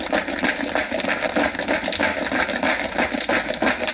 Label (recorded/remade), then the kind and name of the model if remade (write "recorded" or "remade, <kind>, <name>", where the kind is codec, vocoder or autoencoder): remade, vocoder, BigVGAN v2